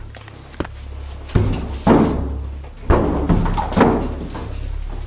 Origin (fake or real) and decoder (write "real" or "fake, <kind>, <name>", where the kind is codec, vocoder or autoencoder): real